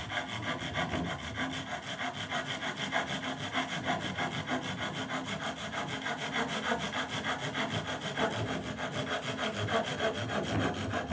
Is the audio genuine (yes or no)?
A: yes